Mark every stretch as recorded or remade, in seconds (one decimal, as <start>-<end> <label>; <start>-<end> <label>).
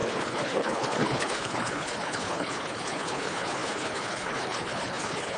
0.0-5.4 remade